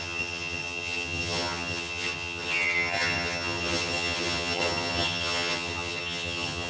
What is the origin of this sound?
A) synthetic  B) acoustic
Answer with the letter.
A